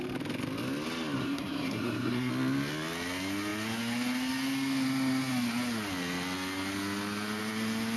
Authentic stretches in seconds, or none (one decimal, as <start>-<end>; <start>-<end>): 0.0-1.2; 2.3-8.0